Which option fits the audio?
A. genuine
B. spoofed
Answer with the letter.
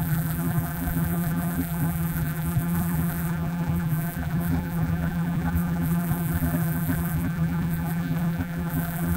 B